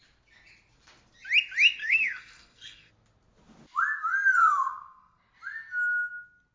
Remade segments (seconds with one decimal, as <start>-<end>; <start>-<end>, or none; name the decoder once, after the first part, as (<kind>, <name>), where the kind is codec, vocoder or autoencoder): 1.8-2.9 (codec, SNAC); 4.4-5.2